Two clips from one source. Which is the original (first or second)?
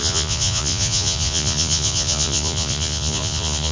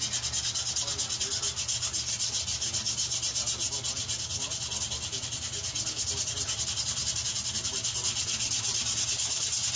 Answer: second